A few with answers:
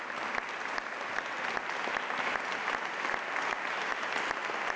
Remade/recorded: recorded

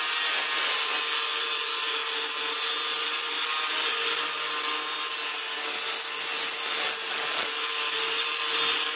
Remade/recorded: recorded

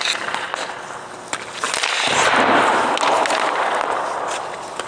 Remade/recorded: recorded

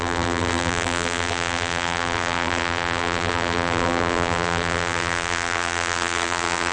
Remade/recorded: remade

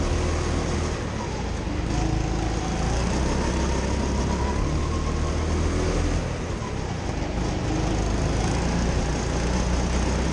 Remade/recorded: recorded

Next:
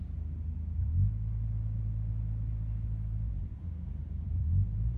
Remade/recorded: recorded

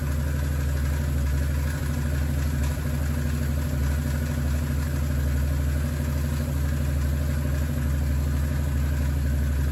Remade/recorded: recorded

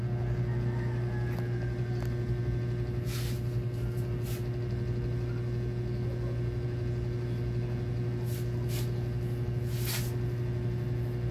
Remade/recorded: recorded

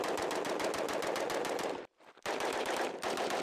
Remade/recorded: remade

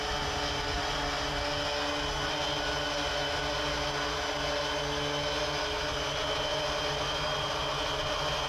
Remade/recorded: recorded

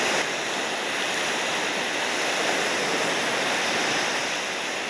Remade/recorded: recorded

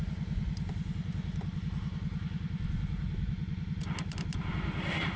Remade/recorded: recorded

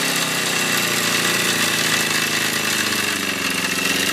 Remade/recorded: recorded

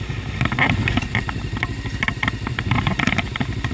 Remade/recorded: remade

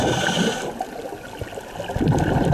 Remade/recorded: recorded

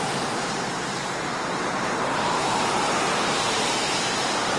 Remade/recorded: remade